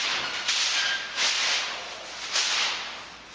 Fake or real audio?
real